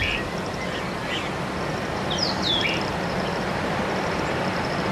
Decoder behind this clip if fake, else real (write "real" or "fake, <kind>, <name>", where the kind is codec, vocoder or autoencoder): fake, vocoder, BigVGAN v2